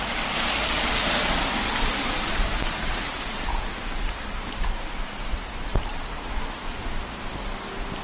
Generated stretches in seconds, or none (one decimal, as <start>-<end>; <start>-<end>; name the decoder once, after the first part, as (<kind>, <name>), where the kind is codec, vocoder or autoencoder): 1.7-4.0 (vocoder, BigVGAN v2); 5.3-5.9